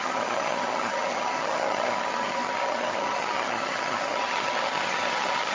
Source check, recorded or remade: remade